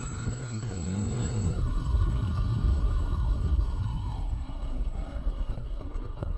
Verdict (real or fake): fake